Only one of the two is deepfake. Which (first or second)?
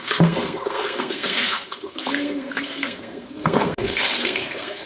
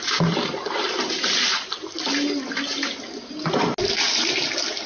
first